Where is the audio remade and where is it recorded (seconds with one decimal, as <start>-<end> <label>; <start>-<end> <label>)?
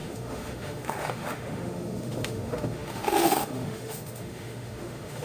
0.0-5.2 remade